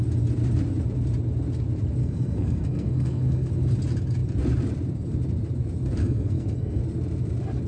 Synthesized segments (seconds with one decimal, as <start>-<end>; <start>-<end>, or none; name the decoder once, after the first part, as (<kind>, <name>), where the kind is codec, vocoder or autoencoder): 2.0-3.5 (codec, SNAC); 6.0-6.8